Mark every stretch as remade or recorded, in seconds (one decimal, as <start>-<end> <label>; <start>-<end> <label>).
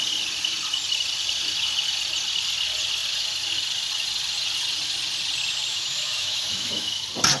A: 0.0-5.7 recorded; 5.7-7.0 remade; 7.0-7.4 recorded